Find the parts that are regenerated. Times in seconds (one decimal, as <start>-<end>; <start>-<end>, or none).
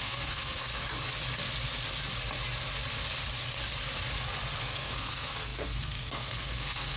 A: 0.0-0.7; 4.6-7.0